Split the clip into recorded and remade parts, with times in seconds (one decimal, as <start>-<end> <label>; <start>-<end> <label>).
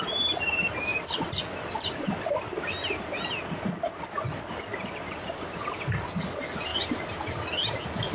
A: 0.0-4.7 recorded; 4.7-5.8 remade; 5.8-6.7 recorded; 6.7-7.3 remade; 7.3-8.1 recorded